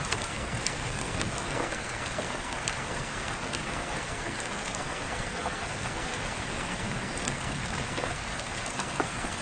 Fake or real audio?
fake